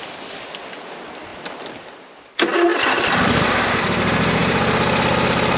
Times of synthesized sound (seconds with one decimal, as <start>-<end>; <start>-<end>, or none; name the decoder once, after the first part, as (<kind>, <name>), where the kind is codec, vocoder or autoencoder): none